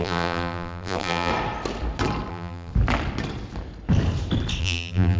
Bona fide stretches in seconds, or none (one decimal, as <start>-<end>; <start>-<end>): 1.3-2.3; 2.7-4.6